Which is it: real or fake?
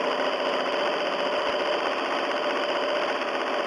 real